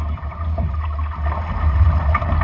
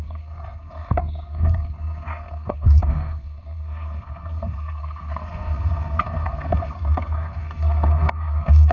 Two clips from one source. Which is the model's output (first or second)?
second